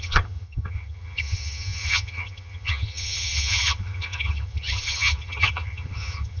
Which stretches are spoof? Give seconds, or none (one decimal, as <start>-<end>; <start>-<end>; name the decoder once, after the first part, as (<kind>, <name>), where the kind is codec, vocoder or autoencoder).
0.0-6.4 (vocoder, HiFi-GAN)